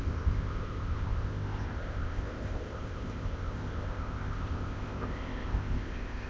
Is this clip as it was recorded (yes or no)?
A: no